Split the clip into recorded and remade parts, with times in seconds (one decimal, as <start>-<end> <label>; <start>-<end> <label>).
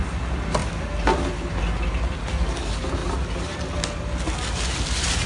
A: 0.0-5.3 recorded